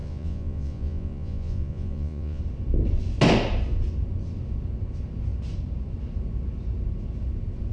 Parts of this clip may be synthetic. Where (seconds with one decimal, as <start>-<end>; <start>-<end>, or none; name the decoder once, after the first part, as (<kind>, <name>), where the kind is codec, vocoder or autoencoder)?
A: 0.0-2.4 (vocoder, Vocos)